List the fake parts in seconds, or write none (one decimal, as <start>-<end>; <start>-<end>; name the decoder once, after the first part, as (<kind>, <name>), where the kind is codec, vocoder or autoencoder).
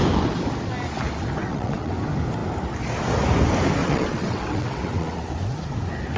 1.4-1.9 (vocoder, WaveNeXt); 3.8-5.3